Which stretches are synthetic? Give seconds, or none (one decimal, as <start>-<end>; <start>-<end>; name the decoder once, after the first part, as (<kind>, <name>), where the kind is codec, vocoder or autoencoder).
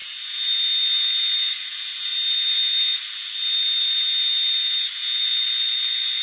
none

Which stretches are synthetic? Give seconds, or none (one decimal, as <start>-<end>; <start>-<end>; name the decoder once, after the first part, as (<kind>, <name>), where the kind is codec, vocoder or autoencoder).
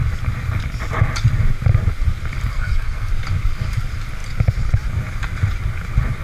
2.5-3.1 (codec, SNAC)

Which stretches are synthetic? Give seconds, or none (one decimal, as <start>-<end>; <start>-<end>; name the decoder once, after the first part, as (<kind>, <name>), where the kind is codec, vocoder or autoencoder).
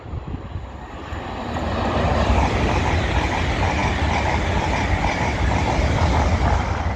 none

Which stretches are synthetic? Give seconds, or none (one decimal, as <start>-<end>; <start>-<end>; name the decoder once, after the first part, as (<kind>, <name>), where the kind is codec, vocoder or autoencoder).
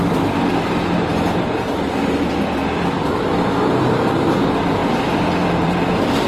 0.0-6.3 (vocoder, BigVGAN v2)